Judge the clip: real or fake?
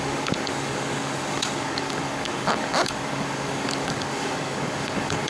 fake